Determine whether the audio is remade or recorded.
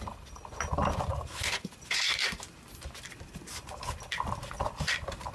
recorded